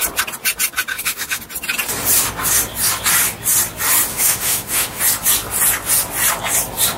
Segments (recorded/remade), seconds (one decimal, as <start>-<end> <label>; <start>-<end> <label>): 0.0-0.9 recorded; 0.9-1.4 remade; 1.4-4.1 recorded; 4.1-5.0 remade; 5.0-7.0 recorded